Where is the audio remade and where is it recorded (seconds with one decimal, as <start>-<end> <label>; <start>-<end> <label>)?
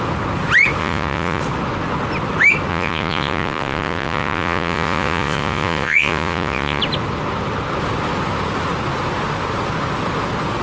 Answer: 0.0-0.8 recorded; 0.8-1.4 remade; 1.4-2.7 recorded; 2.7-6.8 remade; 6.8-10.6 recorded